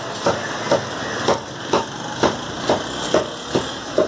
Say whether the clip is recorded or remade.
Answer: recorded